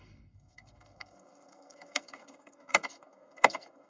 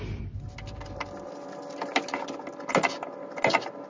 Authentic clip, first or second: second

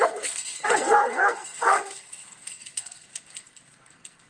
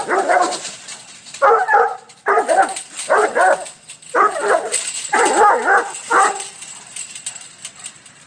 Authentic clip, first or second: second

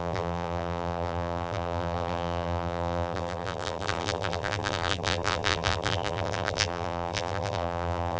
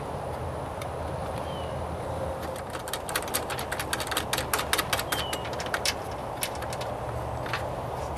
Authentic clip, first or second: second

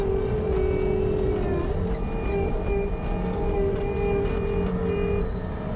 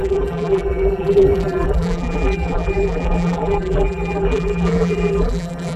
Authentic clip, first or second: first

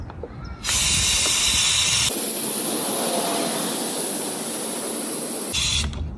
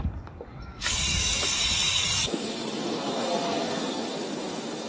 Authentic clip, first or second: first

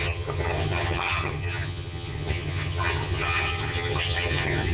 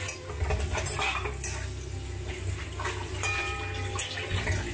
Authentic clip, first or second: second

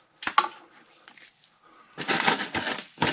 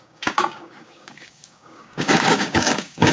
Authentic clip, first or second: first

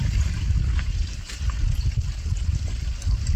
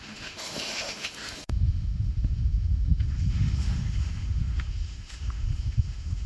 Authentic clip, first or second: first